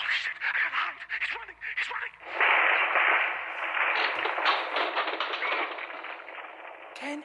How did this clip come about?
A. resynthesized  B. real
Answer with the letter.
B